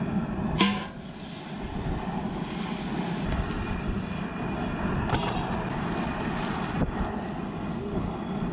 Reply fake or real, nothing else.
real